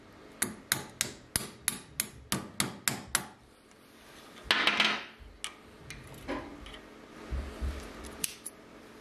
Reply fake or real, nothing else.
real